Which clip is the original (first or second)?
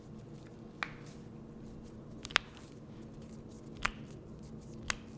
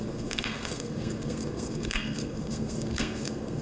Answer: first